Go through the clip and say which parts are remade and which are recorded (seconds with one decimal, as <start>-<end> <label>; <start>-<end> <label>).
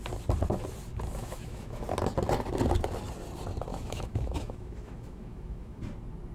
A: 0.0-1.2 recorded; 1.2-1.8 remade; 1.8-3.7 recorded; 3.7-5.8 remade; 5.8-6.3 recorded